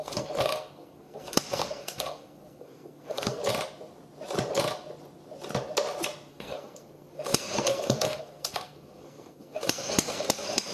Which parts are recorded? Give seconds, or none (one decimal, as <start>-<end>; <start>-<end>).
3.4-6.3